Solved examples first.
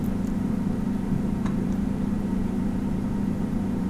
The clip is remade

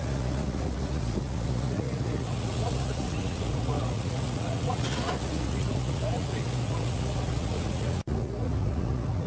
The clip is remade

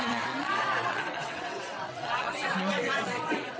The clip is remade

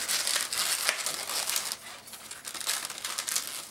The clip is recorded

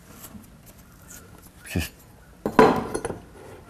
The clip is recorded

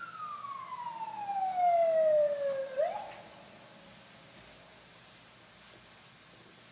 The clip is recorded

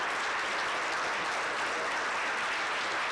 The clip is recorded